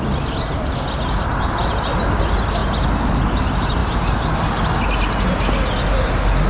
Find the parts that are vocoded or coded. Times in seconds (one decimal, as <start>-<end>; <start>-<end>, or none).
none

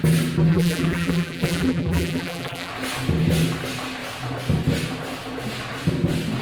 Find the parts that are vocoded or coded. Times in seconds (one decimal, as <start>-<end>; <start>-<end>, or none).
0.5-2.7

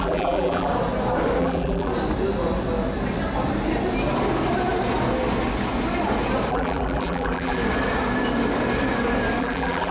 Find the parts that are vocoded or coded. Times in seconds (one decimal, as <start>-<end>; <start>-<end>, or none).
0.0-0.7; 1.4-1.9; 6.5-7.6; 9.4-9.9